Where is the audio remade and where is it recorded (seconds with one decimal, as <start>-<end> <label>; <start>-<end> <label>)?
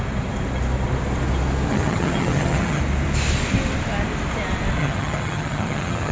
0.0-1.7 recorded; 1.7-2.8 remade; 2.8-4.8 recorded; 4.8-6.1 remade